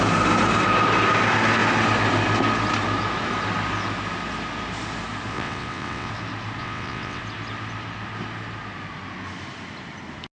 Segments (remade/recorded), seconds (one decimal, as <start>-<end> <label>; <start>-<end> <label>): 0.0-5.3 recorded; 5.3-6.1 remade; 6.1-6.6 recorded; 6.6-7.2 remade; 7.2-10.4 recorded